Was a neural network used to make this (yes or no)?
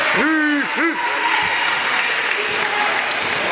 no